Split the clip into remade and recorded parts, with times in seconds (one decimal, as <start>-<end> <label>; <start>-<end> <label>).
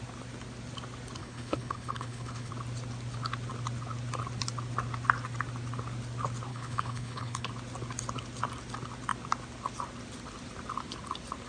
0.0-1.2 recorded; 1.2-2.5 remade; 2.5-6.5 recorded; 6.5-7.5 remade; 7.5-11.5 recorded